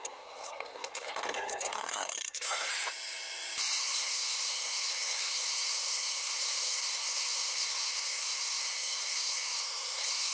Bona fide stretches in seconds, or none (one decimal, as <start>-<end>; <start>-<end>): 2.7-3.8